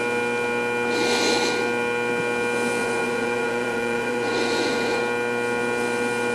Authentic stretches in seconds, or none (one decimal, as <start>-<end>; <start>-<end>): 0.0-2.8; 5.0-6.3